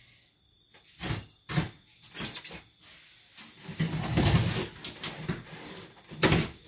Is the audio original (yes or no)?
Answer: yes